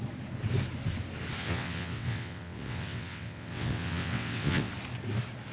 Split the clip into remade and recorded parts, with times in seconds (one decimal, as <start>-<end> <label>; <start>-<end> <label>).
0.0-1.4 recorded; 1.4-4.7 remade; 4.7-5.5 recorded

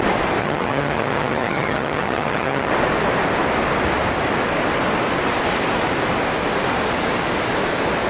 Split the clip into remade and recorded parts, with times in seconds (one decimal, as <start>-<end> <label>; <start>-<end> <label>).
0.0-0.4 recorded; 0.4-2.7 remade; 2.7-8.1 recorded

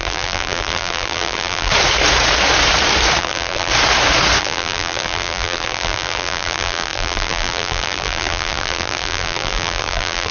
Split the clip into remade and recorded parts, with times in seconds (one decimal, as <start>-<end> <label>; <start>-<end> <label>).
0.0-1.7 remade; 1.7-3.2 recorded; 3.2-3.7 remade; 3.7-4.4 recorded; 4.4-10.3 remade

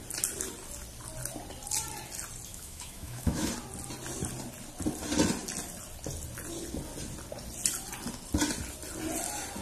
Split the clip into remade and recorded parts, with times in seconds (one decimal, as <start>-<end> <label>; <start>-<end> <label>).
0.0-2.5 recorded; 2.5-3.5 remade; 3.5-9.6 recorded